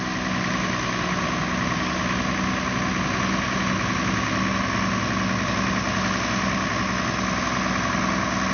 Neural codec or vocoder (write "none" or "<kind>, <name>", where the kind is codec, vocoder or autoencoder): none